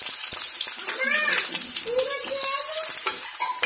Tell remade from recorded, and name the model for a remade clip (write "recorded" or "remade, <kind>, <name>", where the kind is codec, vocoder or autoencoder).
remade, vocoder, BigVGAN v2